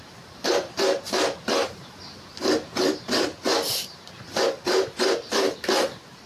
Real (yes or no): no